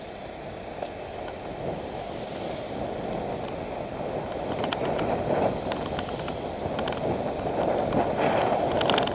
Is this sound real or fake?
real